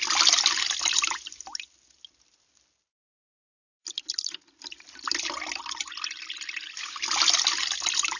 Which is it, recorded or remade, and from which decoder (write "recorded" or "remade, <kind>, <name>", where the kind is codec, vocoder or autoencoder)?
recorded